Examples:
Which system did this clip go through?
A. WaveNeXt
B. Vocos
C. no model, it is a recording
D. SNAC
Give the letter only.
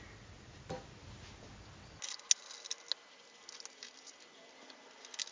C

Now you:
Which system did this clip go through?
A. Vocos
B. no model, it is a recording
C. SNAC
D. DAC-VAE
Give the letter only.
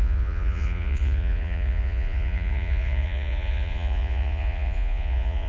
A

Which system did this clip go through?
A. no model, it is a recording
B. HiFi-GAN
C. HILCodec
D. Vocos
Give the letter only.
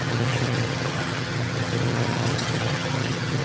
B